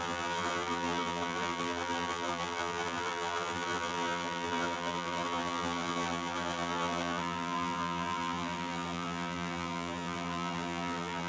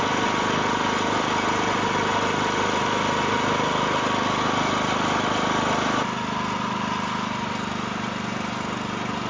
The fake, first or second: first